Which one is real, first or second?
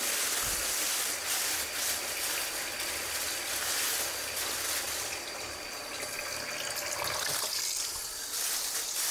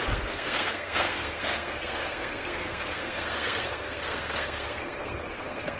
first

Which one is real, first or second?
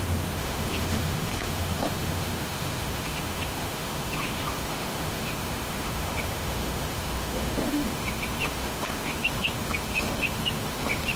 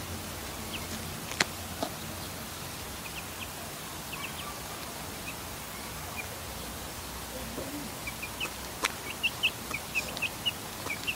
second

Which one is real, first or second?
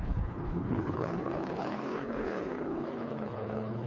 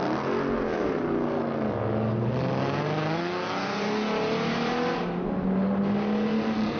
second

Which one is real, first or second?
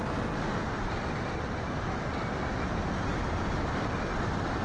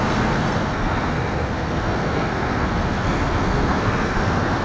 first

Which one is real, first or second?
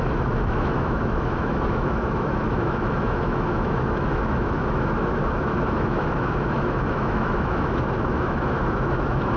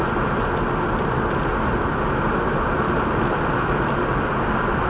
second